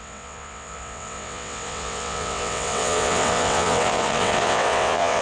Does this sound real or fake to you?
fake